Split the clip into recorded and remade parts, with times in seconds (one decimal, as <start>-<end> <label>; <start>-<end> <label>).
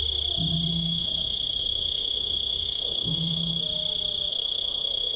0.0-0.7 recorded; 0.7-3.6 remade; 3.6-4.3 recorded; 4.3-5.2 remade